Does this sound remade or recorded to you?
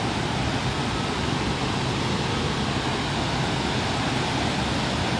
recorded